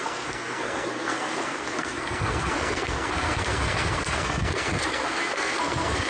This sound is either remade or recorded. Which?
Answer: remade